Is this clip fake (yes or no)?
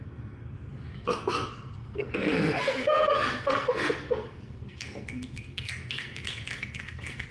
yes